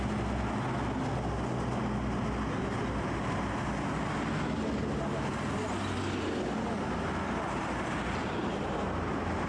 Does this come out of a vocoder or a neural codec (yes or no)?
no